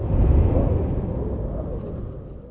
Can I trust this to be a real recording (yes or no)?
yes